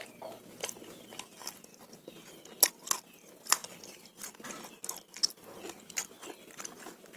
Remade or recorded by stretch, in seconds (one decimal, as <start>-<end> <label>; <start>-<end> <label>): 0.0-7.2 recorded